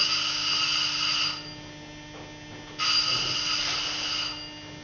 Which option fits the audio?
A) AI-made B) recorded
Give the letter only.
B